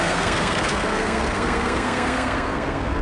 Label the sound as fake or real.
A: fake